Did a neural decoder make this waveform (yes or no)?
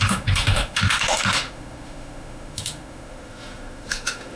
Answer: yes